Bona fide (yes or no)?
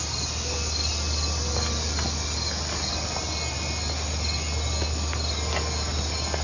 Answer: yes